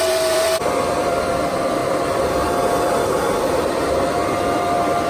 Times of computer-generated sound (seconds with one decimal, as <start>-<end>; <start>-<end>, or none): 0.0-5.1

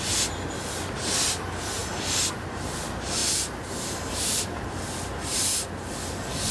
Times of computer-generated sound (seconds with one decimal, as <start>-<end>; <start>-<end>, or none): 3.2-5.7

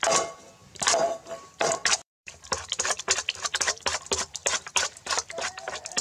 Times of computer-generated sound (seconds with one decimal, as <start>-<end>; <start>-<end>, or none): 0.6-3.0

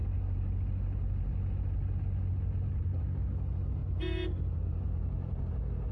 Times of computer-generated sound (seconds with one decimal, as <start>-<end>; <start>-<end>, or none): 3.8-5.4

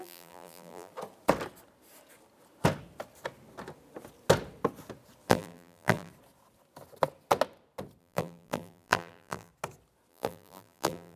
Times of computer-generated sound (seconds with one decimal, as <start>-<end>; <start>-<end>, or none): 0.0-0.9; 5.3-6.1; 8.0-9.5; 10.1-11.2

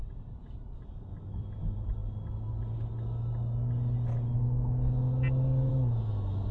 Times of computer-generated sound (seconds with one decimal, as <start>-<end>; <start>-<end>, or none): 0.0-1.1

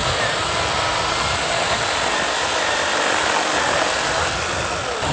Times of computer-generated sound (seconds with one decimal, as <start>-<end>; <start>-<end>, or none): 0.0-0.5; 0.9-1.5